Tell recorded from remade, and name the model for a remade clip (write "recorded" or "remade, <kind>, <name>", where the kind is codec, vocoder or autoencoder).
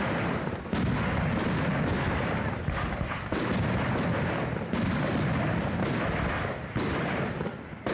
recorded